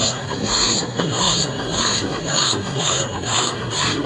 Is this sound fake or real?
fake